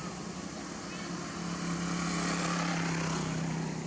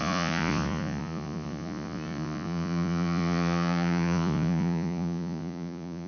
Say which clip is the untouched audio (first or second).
first